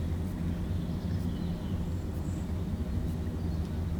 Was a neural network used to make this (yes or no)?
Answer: no